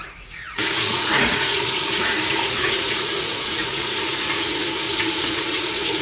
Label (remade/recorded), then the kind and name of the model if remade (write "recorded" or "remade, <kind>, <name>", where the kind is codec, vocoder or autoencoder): remade, vocoder, Vocos